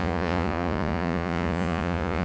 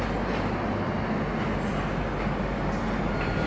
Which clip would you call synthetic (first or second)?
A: first